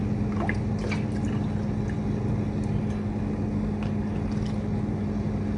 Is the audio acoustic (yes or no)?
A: yes